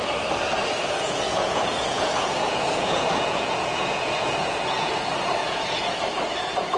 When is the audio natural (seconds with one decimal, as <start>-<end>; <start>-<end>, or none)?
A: 0.0-0.8; 4.9-5.4; 6.0-6.8